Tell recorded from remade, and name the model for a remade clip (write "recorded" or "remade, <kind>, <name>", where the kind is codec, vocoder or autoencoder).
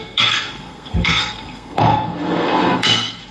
remade, codec, SNAC